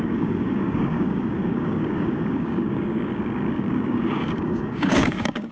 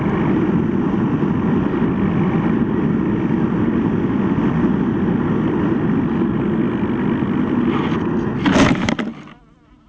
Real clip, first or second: second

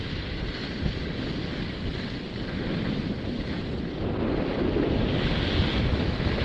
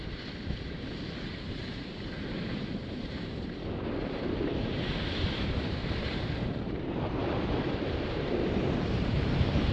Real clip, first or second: first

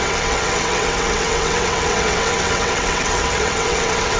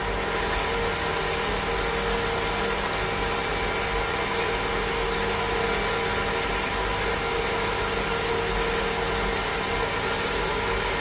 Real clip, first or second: second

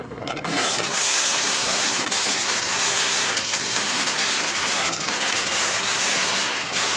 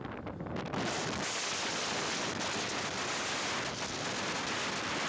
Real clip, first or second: second